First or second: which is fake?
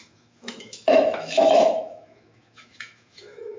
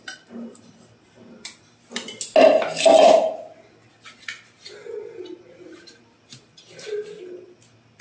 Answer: first